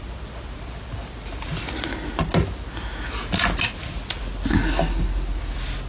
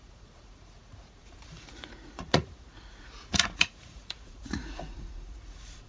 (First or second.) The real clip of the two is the first